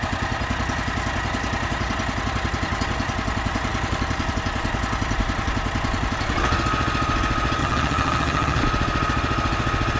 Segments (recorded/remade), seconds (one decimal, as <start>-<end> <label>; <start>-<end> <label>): 0.0-7.6 recorded; 7.6-8.6 remade; 8.6-10.0 recorded